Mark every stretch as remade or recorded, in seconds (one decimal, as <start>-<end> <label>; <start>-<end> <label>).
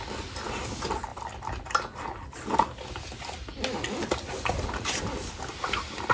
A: 0.0-6.1 recorded